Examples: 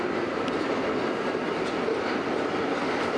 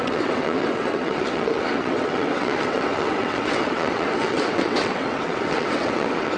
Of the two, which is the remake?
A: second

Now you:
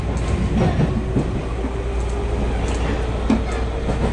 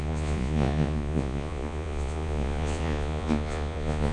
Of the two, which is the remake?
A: second